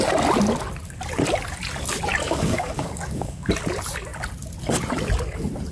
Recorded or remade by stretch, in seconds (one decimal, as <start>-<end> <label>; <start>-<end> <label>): 0.0-2.2 recorded; 2.2-3.5 remade; 3.5-5.7 recorded